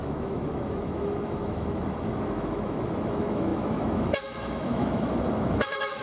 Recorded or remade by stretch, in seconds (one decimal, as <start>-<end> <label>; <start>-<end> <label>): 0.0-6.0 remade